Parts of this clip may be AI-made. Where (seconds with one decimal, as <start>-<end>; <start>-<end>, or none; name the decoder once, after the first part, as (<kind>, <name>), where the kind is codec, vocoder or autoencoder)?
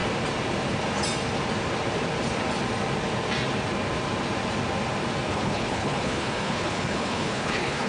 5.3-7.9 (codec, HILCodec)